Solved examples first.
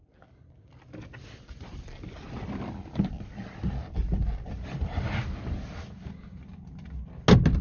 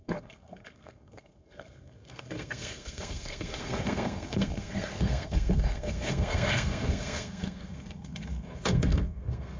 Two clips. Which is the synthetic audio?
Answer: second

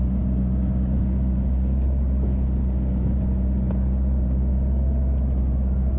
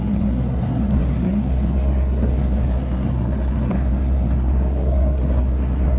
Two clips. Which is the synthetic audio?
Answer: second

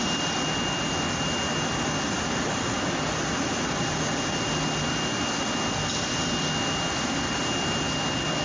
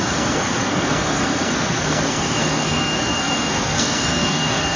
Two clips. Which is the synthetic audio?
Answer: second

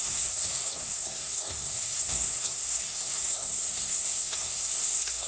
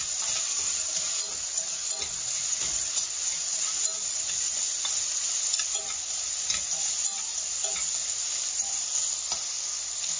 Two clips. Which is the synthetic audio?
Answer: first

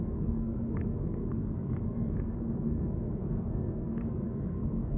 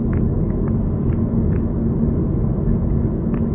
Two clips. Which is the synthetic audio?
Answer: first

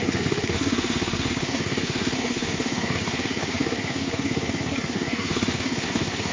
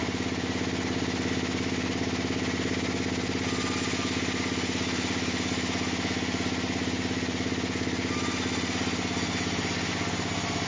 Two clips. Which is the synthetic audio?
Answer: first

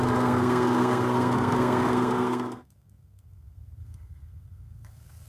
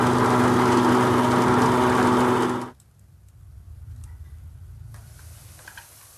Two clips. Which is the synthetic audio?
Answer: first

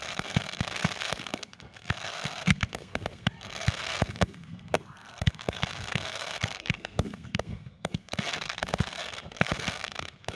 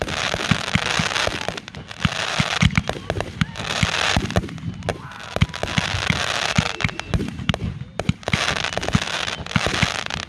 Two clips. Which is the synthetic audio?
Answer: first